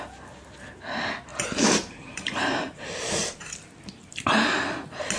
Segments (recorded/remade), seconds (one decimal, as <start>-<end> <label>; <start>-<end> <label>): 0.0-1.3 recorded; 1.3-3.7 remade; 3.7-5.2 recorded